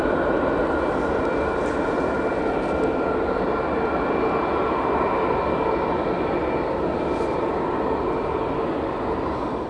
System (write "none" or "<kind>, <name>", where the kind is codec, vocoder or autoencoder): none